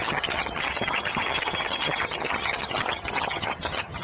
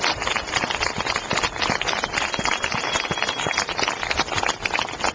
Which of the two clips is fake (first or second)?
first